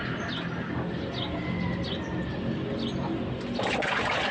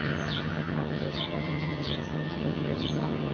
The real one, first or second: first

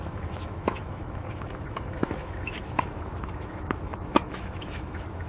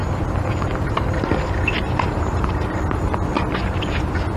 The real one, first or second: second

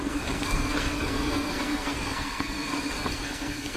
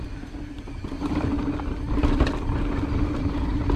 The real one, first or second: second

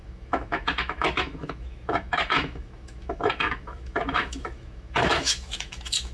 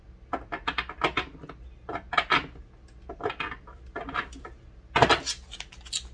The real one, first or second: second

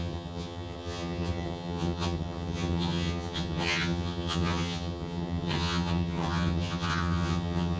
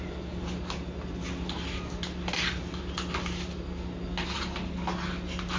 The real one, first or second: second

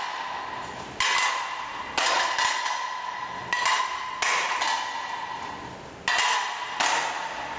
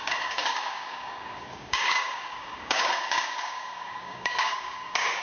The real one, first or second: first